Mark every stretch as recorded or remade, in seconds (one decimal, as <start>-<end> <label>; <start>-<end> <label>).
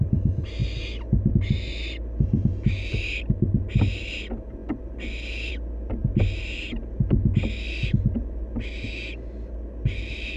0.0-10.4 recorded